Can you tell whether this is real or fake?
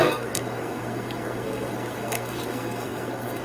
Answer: fake